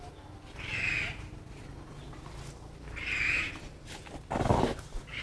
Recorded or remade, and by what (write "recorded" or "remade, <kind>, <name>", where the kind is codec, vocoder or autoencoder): recorded